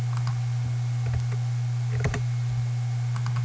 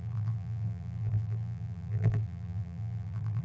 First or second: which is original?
first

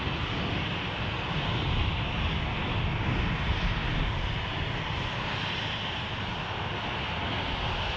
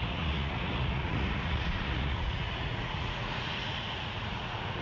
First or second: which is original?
first